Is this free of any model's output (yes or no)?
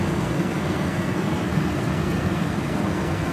no